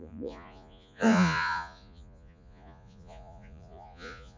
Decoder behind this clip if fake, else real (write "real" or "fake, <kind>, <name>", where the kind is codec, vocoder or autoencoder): fake, vocoder, Vocos